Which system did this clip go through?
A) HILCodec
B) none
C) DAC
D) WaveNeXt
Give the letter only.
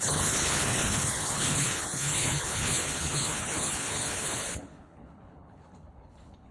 A